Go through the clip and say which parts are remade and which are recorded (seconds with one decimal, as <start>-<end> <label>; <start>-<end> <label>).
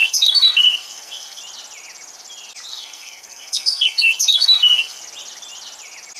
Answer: 0.0-1.4 remade; 1.4-2.7 recorded; 2.7-5.0 remade; 5.0-6.2 recorded